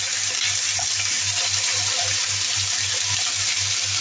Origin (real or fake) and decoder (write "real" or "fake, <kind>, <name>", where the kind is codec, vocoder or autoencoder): real